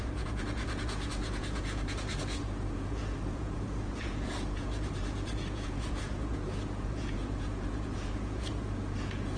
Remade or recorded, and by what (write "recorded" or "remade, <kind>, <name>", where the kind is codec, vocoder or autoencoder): remade, vocoder, Vocos